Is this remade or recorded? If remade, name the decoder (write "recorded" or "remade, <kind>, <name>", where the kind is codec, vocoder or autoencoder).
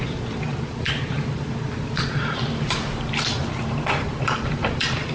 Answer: remade, vocoder, BigVGAN v2